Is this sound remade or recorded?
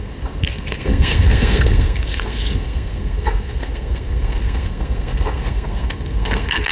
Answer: remade